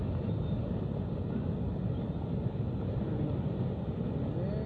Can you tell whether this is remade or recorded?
recorded